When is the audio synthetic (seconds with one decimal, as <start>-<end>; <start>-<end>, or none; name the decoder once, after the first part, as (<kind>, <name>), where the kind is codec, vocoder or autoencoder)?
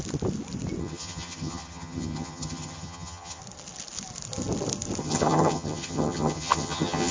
0.8-3.4 (vocoder, HiFi-GAN); 5.0-7.1